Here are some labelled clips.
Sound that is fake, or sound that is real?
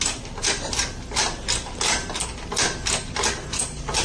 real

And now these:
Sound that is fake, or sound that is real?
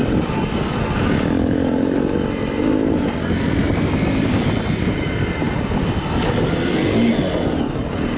real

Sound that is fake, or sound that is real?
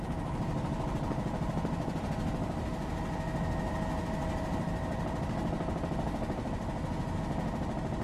real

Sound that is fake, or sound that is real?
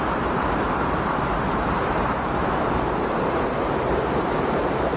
fake